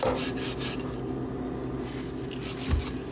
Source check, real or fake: real